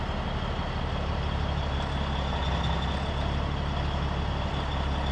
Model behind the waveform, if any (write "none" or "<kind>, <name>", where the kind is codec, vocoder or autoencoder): none